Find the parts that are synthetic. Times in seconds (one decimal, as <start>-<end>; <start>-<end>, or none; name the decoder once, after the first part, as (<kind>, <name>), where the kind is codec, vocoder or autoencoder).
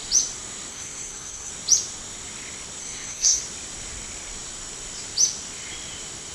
0.7-1.5 (codec, SNAC); 2.8-3.4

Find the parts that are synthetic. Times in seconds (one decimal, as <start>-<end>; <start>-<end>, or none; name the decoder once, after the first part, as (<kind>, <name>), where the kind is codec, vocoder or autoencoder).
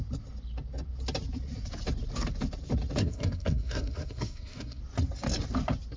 3.0-4.8 (codec, SNAC)